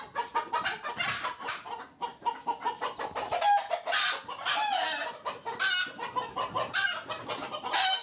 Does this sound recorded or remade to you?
recorded